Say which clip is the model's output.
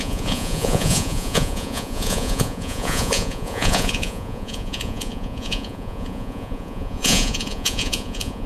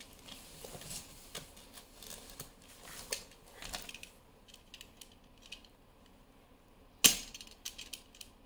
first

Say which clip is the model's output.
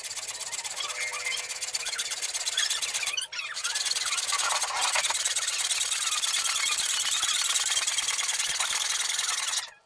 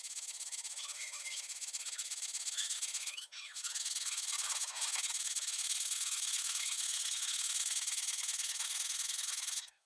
second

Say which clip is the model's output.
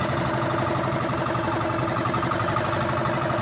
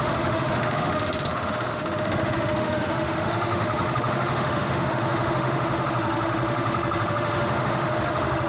second